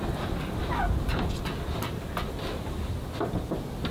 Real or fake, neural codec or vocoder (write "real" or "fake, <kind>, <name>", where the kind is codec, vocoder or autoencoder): real